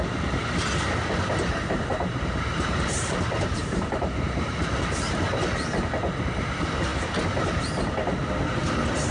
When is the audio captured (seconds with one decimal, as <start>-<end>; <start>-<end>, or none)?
0.0-1.9; 5.2-9.1